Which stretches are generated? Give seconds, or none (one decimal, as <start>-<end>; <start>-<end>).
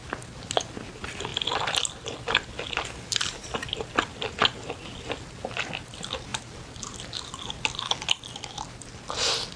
1.3-1.8